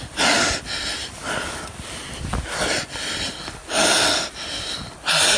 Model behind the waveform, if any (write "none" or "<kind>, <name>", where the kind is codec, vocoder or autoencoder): none